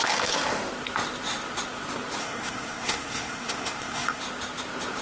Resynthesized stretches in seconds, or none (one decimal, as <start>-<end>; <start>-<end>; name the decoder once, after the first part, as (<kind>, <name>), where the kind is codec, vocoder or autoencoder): 2.2-4.2 (codec, SNAC)